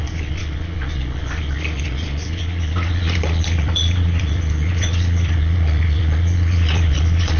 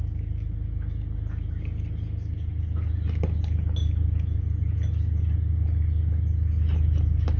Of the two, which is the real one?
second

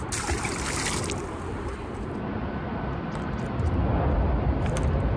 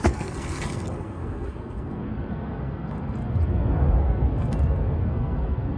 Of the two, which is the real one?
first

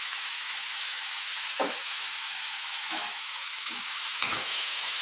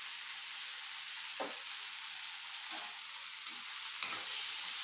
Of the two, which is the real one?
second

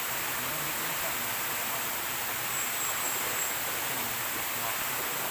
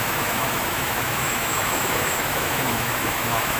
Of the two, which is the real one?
first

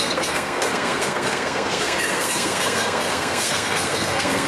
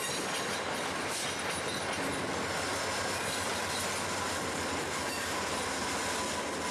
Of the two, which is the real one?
second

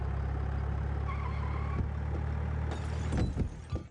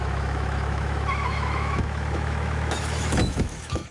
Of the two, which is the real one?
first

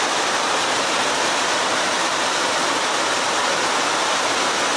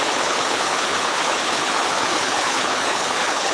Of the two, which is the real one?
first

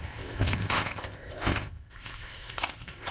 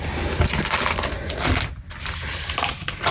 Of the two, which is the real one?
second